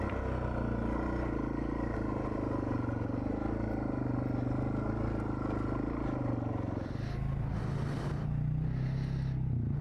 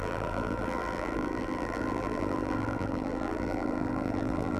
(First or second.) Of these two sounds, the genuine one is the first